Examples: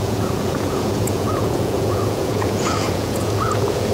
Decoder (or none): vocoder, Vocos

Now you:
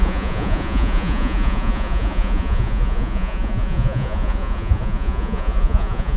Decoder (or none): vocoder, Vocos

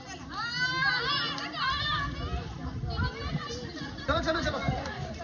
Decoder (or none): none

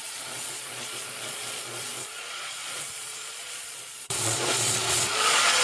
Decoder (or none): vocoder, Vocos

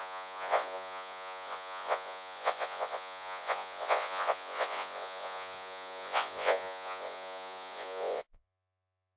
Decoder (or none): vocoder, Vocos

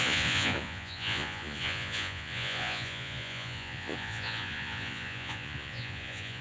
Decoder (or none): vocoder, Vocos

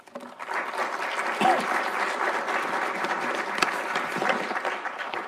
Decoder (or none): none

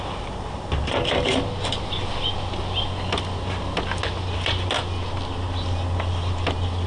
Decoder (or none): none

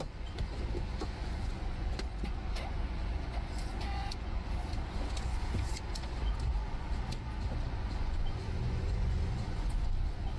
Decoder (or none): vocoder, Vocos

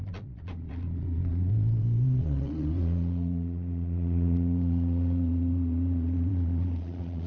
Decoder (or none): vocoder, Vocos